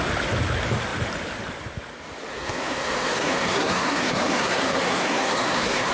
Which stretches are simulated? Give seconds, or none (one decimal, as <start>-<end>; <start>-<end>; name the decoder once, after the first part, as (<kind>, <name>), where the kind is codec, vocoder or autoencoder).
2.3-5.9 (codec, SNAC)